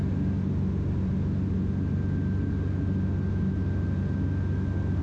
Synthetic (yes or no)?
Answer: no